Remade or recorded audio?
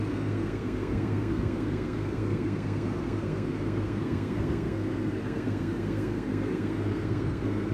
remade